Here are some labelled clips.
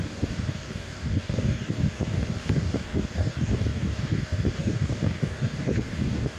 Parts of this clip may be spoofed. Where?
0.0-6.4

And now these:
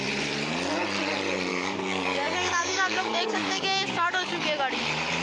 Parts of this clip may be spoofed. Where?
1.5-4.4